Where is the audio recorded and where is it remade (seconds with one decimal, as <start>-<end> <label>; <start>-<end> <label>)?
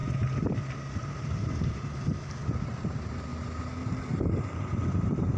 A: 0.0-3.3 remade; 3.3-4.1 recorded; 4.1-5.4 remade